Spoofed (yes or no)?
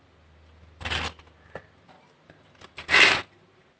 no